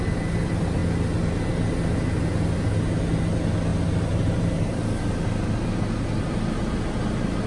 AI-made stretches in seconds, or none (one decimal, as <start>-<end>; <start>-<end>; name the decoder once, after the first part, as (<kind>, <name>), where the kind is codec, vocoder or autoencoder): 3.7-4.8 (vocoder, BigVGAN v2)